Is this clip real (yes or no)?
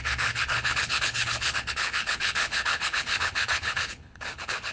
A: no